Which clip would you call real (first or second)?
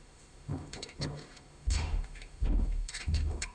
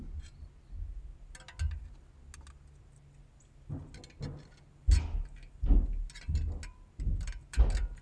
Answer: second